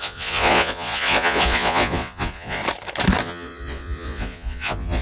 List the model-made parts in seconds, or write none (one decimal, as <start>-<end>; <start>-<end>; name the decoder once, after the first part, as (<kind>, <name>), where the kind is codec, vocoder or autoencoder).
0.0-2.6 (vocoder, Vocos); 3.2-5.0